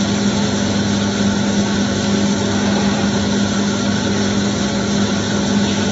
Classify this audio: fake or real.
real